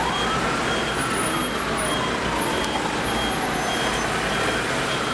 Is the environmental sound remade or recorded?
recorded